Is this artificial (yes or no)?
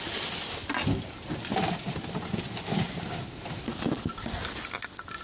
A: no